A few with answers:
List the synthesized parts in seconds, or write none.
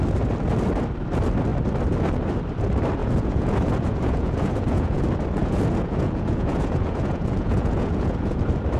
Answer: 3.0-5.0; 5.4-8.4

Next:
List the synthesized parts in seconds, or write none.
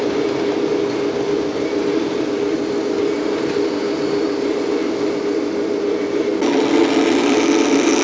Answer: none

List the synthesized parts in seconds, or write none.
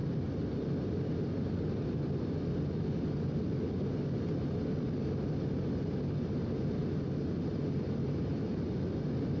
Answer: none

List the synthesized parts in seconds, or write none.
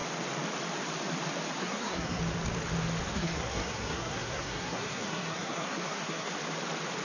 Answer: 1.6-2.2; 3.1-6.3